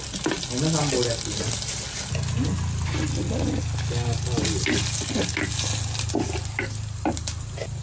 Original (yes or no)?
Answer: yes